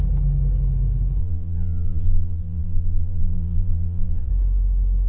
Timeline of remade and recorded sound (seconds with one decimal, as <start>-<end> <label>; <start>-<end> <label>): 0.0-1.2 recorded; 1.2-4.3 remade; 4.3-5.1 recorded